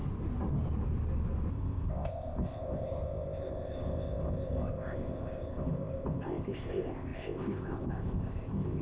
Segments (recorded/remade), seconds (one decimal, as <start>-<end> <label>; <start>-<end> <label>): 0.0-1.5 recorded; 1.5-8.8 remade